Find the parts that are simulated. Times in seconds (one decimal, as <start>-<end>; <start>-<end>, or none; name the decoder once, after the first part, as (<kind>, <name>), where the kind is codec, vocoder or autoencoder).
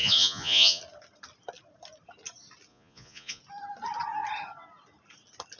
0.0-0.8 (vocoder, Vocos); 2.7-3.4